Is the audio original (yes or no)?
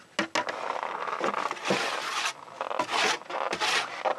yes